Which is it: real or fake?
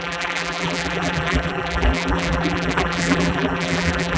fake